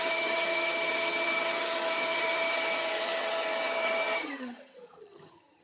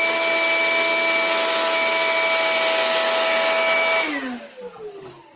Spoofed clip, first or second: first